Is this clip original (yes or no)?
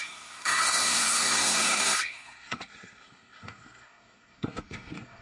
no